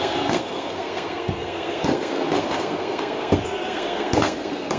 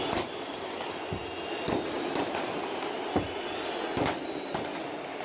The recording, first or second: second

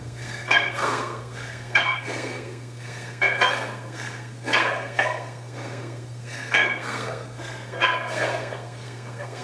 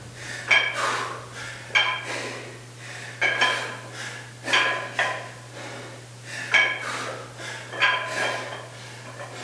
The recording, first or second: second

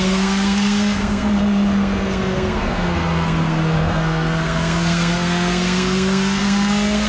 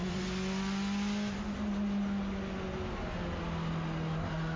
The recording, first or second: second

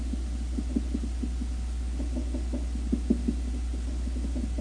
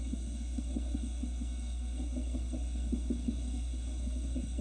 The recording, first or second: first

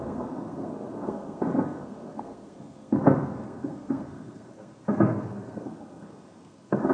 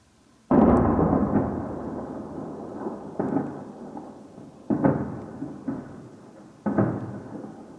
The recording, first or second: second